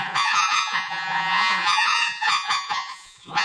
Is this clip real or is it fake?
fake